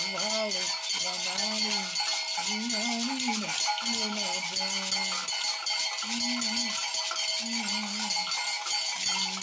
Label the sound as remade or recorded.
recorded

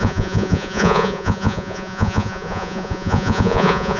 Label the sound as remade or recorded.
remade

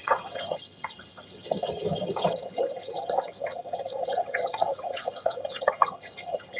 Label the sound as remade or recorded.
remade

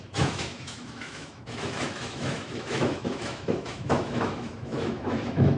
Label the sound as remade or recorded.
remade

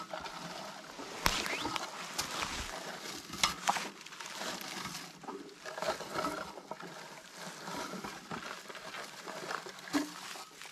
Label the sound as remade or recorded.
recorded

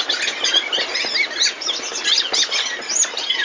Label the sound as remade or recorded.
recorded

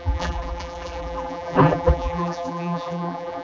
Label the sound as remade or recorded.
remade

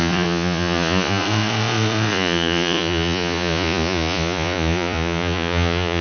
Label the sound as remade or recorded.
remade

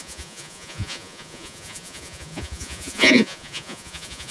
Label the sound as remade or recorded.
remade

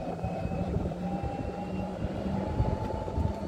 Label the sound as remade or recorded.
remade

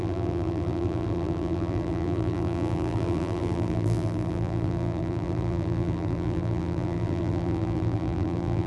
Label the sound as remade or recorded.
remade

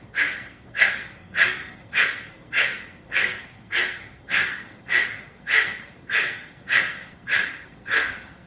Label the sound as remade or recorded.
remade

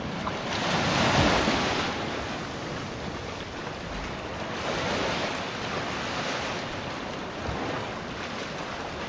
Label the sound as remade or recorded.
recorded